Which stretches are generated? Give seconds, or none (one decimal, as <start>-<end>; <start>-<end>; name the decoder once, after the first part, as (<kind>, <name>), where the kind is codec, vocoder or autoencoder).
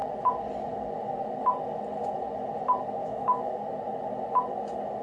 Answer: 3.0-3.5 (autoencoder, DAC-VAE)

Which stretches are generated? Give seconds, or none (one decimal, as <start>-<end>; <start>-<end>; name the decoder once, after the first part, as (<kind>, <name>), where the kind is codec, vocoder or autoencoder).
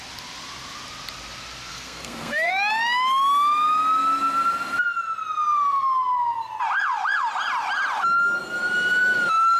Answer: 1.7-2.5 (codec, SNAC)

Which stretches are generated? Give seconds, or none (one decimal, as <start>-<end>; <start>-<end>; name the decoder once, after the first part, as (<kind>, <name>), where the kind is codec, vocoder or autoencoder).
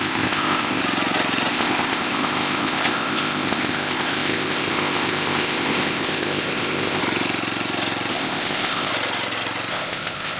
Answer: 0.0-0.8 (codec, ZipCodec); 1.5-7.0; 8.1-8.9; 9.7-10.4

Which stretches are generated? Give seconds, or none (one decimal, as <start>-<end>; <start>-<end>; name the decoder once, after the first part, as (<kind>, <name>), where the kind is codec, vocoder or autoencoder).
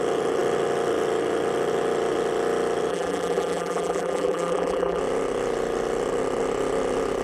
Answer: 2.9-5.0 (vocoder, BigVGAN v2)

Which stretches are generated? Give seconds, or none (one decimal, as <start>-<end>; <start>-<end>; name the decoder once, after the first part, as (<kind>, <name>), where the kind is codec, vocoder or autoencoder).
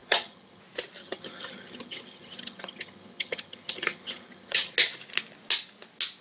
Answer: 0.0-0.6 (vocoder, HiFi-GAN); 1.0-4.7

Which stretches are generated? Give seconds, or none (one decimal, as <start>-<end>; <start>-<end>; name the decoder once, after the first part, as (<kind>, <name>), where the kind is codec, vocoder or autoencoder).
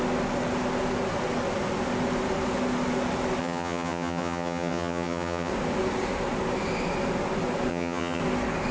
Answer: 3.4-5.5 (vocoder, HiFi-GAN); 7.7-8.2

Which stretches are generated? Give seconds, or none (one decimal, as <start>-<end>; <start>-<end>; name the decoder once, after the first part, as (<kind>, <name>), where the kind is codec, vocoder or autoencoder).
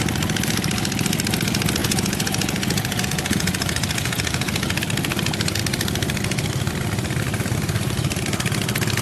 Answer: 1.8-4.8 (vocoder, Vocos)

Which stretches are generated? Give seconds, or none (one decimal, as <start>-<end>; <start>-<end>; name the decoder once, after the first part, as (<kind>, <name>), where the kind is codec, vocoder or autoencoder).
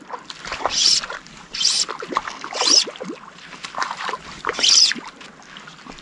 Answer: none